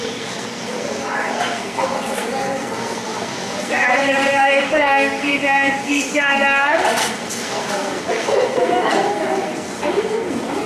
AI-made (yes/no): yes